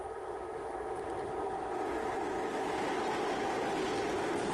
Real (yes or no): yes